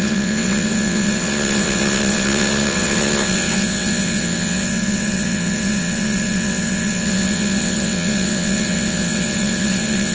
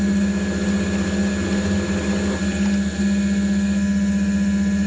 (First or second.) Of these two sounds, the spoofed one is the first